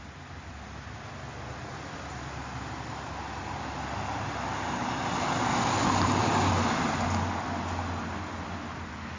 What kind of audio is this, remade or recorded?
recorded